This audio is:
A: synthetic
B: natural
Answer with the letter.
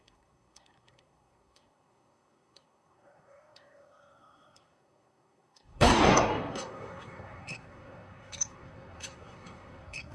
A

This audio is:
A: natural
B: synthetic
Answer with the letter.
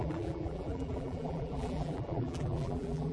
B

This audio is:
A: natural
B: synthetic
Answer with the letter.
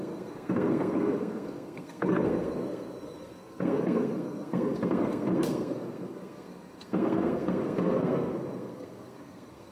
B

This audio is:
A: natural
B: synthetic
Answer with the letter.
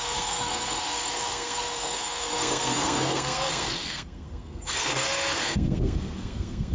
B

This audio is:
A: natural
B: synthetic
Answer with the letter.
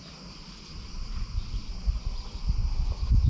A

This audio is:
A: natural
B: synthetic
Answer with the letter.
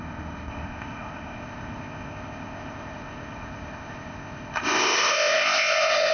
B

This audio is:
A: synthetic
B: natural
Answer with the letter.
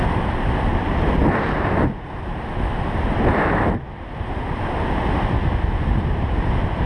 B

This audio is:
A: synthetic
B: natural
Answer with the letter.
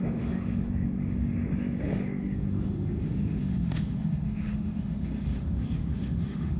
A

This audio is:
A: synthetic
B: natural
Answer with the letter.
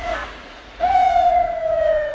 A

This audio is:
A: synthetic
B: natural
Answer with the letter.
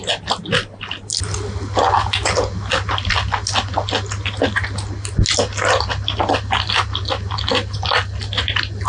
B